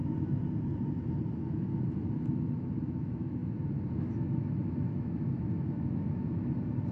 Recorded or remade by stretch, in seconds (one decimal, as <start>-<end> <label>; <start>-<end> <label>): 0.0-0.9 recorded; 0.9-3.4 remade; 3.4-3.9 recorded; 3.9-6.9 remade